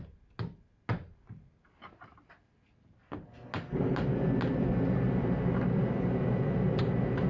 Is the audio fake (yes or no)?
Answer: no